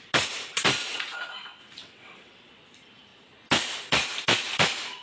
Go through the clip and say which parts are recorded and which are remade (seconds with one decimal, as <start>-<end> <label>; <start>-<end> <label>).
0.0-0.8 recorded; 0.8-2.5 remade; 2.5-5.0 recorded